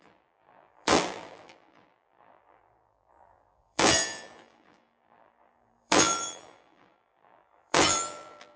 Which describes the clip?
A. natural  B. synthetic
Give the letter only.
B